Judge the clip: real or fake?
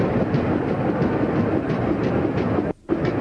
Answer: real